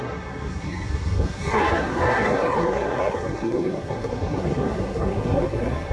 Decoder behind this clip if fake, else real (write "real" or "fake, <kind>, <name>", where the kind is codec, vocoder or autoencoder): fake, codec, SNAC